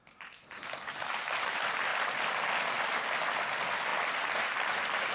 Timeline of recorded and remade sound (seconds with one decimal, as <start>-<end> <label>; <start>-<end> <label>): 0.0-5.1 recorded